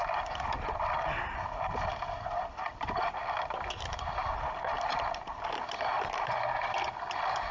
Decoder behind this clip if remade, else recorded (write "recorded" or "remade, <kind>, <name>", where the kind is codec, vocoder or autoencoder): recorded